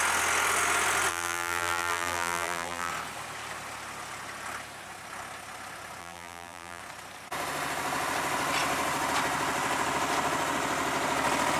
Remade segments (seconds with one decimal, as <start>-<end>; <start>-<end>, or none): 1.1-2.9; 6.0-6.8